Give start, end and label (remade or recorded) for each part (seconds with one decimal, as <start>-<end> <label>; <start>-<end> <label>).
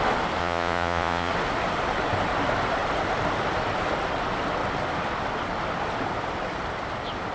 0.0-0.4 recorded; 0.4-1.3 remade; 1.3-7.3 recorded